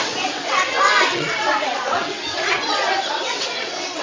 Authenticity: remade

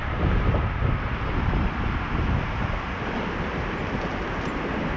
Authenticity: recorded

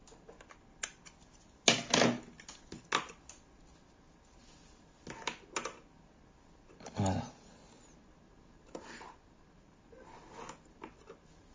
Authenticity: recorded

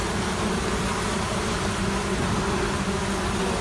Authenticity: recorded